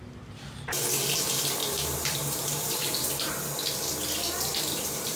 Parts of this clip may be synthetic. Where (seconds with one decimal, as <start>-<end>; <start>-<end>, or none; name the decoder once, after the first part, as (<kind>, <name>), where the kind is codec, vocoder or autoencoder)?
1.6-3.3 (vocoder, BigVGAN v2); 4.5-5.2